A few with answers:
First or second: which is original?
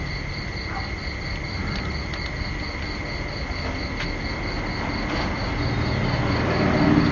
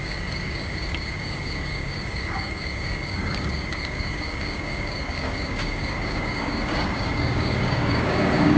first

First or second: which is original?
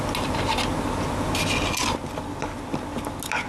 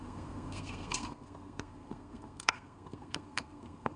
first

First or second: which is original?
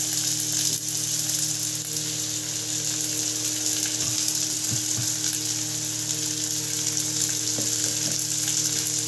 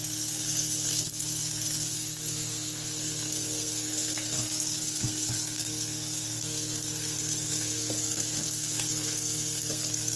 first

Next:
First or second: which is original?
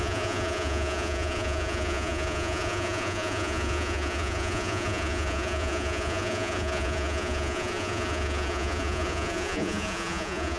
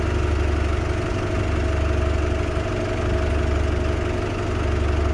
second